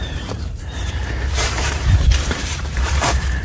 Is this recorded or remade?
remade